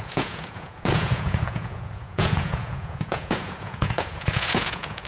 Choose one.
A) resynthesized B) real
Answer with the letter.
A